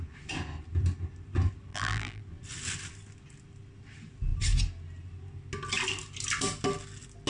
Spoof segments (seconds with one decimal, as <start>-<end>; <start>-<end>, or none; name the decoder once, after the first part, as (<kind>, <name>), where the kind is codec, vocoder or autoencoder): 1.7-2.2 (vocoder, BigVGAN v2)

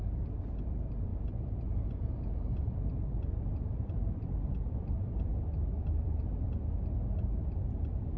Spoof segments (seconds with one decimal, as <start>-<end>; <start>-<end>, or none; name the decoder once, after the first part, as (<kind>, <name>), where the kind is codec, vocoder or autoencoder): 0.0-5.3 (vocoder, BigVGAN v2)